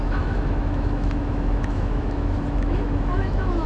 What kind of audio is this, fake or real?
fake